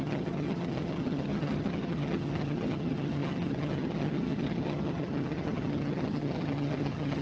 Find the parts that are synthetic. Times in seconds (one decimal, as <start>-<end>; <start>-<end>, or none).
0.0-7.2